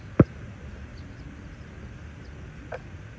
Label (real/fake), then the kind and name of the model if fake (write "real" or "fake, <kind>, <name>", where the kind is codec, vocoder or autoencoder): real